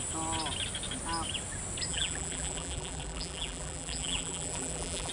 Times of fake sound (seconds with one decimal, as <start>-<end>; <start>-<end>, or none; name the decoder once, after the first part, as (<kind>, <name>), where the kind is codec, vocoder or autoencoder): 1.9-5.1 (vocoder, BigVGAN v2)